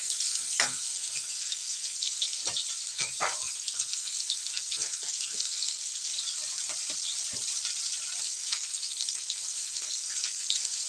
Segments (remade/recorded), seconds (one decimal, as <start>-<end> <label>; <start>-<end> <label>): 0.0-2.4 remade; 2.4-2.9 recorded; 2.9-6.1 remade; 6.1-8.2 recorded; 8.2-10.9 remade